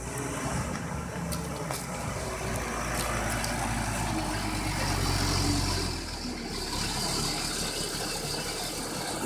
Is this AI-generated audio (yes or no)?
no